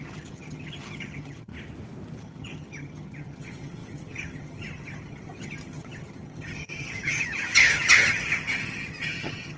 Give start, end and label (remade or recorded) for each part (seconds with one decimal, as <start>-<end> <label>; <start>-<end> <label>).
0.0-1.5 remade; 1.5-2.2 recorded; 2.2-9.6 remade